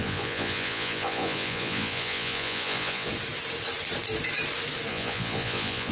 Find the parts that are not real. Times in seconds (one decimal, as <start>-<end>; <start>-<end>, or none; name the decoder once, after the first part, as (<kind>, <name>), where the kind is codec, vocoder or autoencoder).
0.0-3.1 (vocoder, Vocos); 4.9-5.9